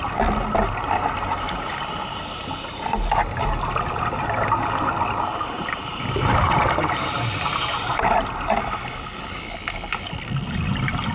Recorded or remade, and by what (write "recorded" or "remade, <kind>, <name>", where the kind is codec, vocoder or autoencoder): recorded